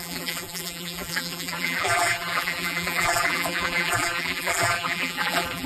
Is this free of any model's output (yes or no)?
no